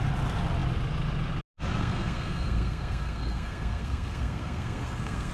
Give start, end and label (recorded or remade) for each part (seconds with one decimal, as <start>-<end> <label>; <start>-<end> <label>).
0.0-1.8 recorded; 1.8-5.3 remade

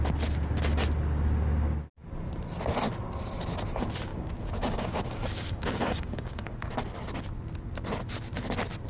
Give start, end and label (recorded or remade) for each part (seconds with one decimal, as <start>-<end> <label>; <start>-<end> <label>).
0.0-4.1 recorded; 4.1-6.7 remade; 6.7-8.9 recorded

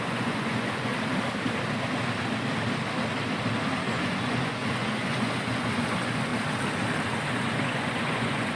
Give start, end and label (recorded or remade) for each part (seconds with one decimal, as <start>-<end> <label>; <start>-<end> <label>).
0.0-0.9 remade; 0.9-3.9 recorded; 3.9-6.3 remade; 6.3-7.3 recorded; 7.3-8.6 remade